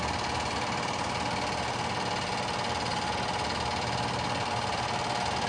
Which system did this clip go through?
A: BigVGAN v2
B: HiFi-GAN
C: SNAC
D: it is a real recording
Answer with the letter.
D